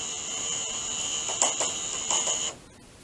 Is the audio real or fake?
real